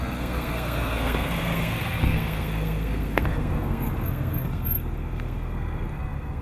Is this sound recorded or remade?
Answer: remade